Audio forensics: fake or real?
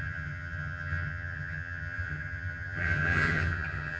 fake